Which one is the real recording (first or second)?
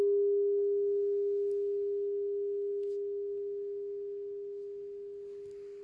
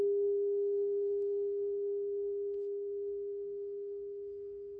first